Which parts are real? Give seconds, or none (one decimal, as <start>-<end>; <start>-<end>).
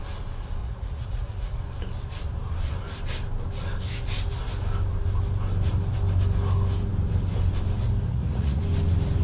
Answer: 0.0-0.6; 1.6-8.1; 8.6-9.2